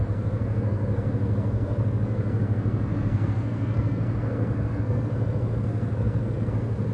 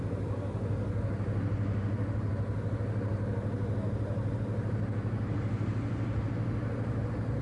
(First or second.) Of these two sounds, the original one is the second